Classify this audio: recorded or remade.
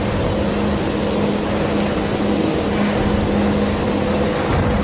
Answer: recorded